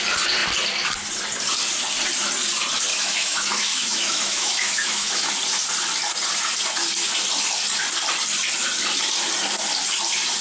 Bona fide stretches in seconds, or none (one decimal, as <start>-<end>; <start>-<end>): 0.0-2.9; 5.3-10.4